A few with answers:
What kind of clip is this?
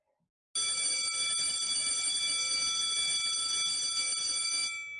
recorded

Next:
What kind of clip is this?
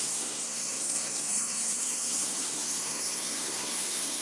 remade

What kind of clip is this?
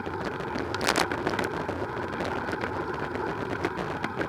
recorded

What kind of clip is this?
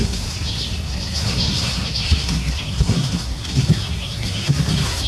remade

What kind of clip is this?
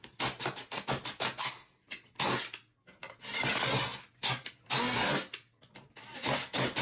recorded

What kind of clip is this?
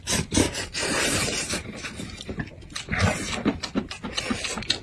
recorded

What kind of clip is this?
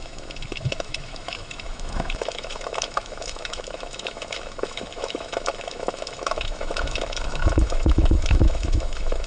remade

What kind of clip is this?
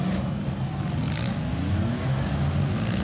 recorded